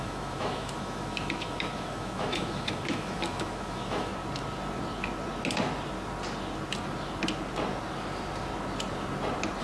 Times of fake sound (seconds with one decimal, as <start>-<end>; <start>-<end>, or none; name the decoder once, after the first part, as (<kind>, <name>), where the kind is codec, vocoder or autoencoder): 0.0-4.1 (autoencoder, DAC-VAE)